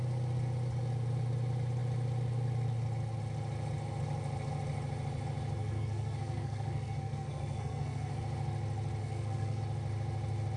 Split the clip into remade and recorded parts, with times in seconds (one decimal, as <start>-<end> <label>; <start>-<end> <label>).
0.0-5.6 recorded; 5.6-8.2 remade; 8.2-9.0 recorded; 9.0-9.6 remade; 9.6-10.6 recorded